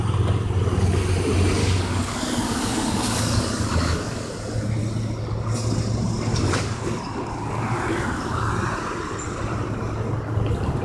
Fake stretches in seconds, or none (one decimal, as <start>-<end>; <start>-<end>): 1.6-4.3; 6.3-8.5